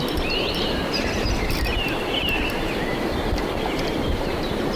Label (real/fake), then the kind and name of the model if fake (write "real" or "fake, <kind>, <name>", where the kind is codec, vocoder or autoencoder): fake, vocoder, BigVGAN v2